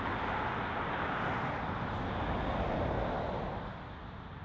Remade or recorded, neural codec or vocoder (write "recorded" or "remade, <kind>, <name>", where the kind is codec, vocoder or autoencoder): recorded